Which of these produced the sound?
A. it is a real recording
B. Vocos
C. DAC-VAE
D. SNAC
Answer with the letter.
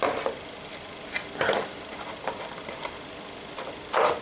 A